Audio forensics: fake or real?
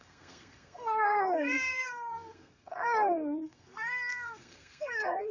fake